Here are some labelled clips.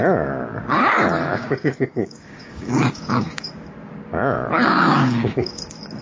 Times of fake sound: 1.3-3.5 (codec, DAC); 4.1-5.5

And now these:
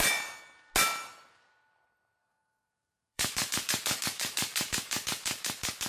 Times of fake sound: 2.2-5.9 (codec, DAC)

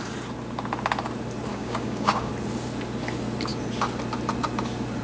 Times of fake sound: 1.5-2.3 (codec, DAC)

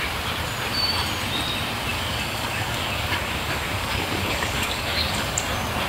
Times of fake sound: 1.9-5.4 (codec, DAC)

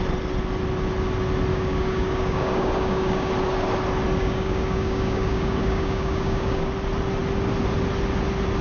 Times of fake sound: 1.5-3.3 (codec, DAC); 4.2-6.7

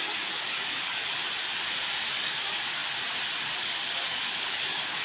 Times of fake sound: 0.0-1.0 (codec, DAC); 2.0-2.8; 3.6-5.0